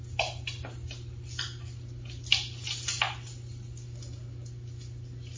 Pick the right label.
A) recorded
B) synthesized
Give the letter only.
A